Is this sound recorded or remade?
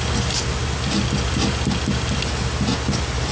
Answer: recorded